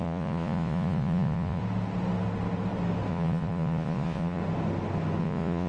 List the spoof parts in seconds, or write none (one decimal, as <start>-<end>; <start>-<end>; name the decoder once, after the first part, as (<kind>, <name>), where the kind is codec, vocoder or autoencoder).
0.0-1.6 (vocoder, Vocos); 3.1-4.4; 5.2-5.7